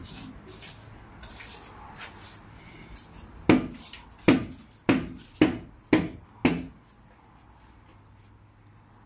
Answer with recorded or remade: recorded